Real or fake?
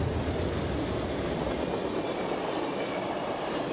real